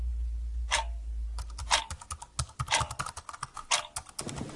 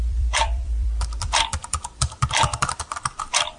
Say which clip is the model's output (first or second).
second